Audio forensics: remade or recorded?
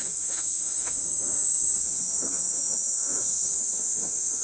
remade